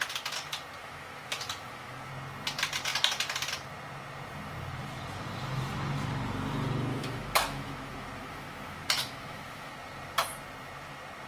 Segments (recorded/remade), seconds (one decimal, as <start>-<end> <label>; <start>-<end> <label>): 0.0-0.8 recorded; 0.8-2.1 remade; 2.1-6.9 recorded; 6.9-9.7 remade; 9.7-11.3 recorded